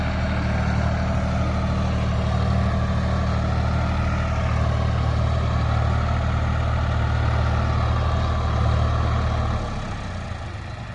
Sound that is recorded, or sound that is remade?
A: recorded